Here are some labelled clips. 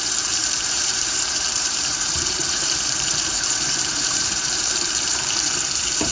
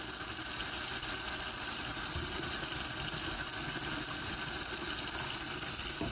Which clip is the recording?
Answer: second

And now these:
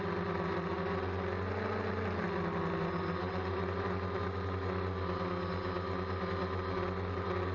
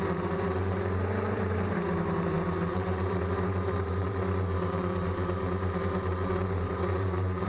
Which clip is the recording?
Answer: first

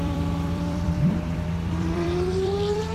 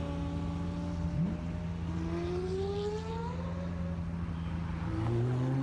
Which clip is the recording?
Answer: second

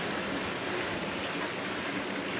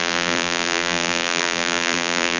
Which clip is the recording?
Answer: first